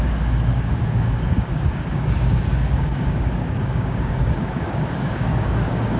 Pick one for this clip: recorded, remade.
remade